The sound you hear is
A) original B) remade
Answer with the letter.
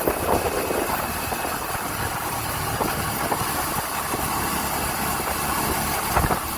A